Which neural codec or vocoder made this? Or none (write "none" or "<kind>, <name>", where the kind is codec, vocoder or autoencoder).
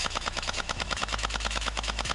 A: autoencoder, DAC-VAE